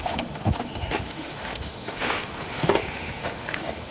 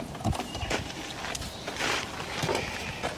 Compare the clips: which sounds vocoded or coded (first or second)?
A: first